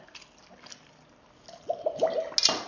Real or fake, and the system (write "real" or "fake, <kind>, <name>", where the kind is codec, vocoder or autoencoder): real